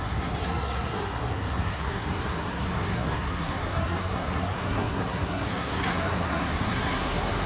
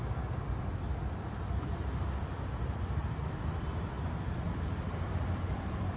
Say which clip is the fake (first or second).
first